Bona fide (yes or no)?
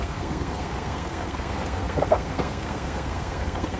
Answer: no